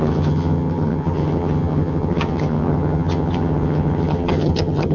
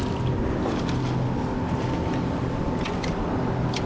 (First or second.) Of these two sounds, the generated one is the first